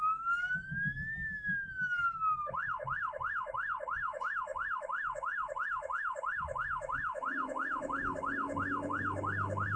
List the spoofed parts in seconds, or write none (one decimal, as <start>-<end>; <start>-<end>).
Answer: 0.0-9.8